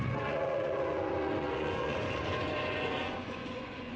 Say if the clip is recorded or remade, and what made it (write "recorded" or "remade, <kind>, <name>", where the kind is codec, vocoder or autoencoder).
remade, vocoder, Vocos